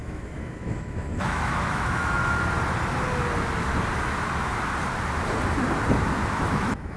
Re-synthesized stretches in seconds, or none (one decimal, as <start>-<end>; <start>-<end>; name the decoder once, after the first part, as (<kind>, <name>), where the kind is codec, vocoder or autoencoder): 0.0-2.2 (autoencoder, DAC-VAE); 6.3-7.0